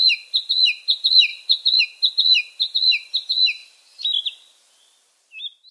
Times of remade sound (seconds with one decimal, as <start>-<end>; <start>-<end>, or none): 1.3-1.8